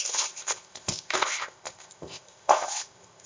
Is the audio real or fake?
fake